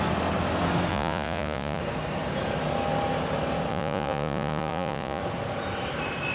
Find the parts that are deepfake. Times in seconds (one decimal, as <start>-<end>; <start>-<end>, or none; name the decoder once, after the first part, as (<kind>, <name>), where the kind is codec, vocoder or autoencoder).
0.9-1.8 (vocoder, Vocos); 3.7-5.2